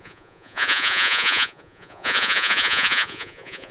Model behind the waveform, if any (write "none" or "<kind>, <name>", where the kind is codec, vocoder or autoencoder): vocoder, Vocos